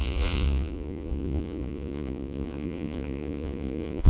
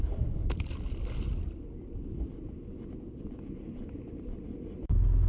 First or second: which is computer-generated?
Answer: first